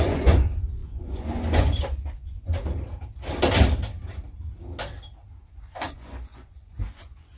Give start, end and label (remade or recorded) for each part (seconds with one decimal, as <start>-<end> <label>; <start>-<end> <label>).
0.0-2.5 remade; 2.5-5.5 recorded; 5.5-7.4 remade